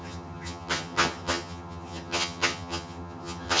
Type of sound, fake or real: fake